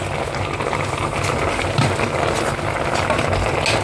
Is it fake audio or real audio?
real